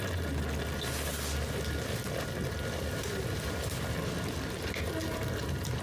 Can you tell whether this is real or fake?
real